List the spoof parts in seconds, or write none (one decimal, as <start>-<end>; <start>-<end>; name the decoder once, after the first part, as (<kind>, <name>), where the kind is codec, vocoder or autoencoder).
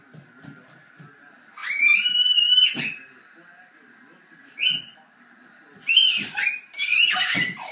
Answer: 1.6-2.8 (vocoder, BigVGAN v2); 6.0-7.0